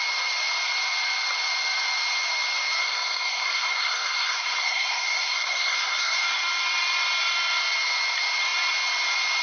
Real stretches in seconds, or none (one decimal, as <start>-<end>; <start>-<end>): 0.0-2.8; 6.2-9.4